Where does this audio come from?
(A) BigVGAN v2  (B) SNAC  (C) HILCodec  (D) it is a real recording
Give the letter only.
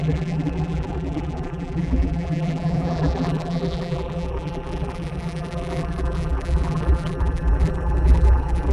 A